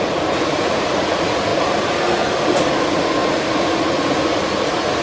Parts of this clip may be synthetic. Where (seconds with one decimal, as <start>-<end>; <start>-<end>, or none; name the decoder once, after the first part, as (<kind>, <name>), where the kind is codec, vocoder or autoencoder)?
0.0-5.0 (vocoder, Vocos)